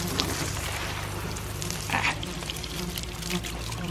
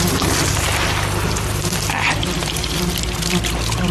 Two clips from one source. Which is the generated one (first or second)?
first